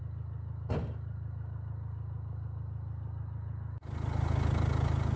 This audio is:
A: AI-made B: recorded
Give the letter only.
B